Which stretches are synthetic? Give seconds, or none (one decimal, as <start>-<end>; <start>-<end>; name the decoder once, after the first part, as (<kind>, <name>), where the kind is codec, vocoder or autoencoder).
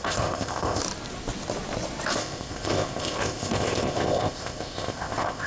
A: 0.0-0.8 (codec, ZipCodec); 2.2-5.5